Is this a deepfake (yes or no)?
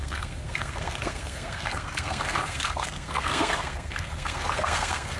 yes